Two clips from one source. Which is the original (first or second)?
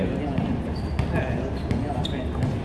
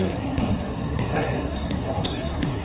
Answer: first